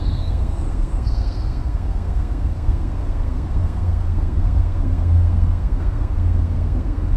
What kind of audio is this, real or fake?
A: fake